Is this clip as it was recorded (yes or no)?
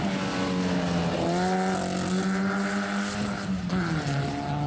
yes